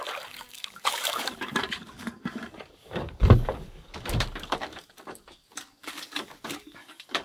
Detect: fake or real fake